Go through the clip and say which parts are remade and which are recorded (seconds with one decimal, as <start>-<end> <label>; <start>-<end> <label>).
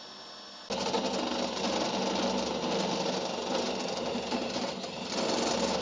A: 0.0-5.8 recorded